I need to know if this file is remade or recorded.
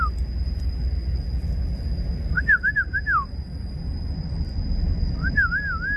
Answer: recorded